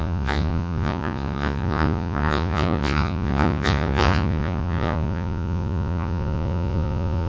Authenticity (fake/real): fake